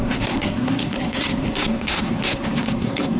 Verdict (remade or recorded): remade